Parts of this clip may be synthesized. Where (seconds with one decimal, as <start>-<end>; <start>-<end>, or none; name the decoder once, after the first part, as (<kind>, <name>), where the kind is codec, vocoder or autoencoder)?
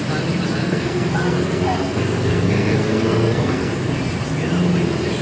0.6-3.7 (codec, SNAC)